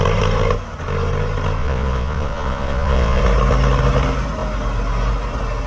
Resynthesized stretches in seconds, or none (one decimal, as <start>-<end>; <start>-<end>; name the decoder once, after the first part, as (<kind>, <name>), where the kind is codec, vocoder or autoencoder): 1.6-3.2 (vocoder, Vocos)